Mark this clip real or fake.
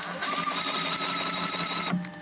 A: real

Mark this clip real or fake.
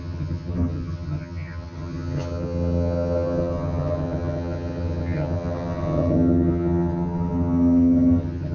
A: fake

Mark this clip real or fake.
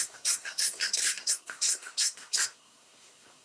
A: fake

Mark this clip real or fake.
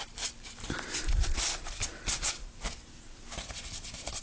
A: real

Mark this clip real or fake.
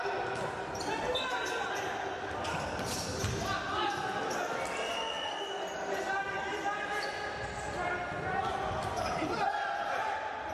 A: real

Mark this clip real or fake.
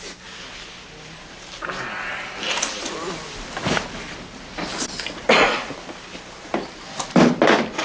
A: real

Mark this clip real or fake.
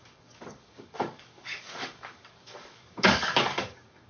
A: fake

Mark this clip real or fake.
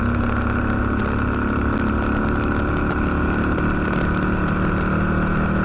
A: real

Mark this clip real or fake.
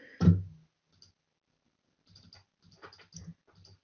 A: real